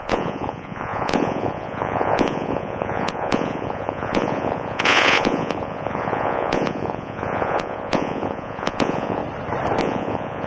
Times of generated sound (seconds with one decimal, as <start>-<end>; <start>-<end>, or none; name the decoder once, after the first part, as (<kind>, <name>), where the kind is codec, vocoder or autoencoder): 0.0-9.2 (vocoder, Vocos); 9.8-10.5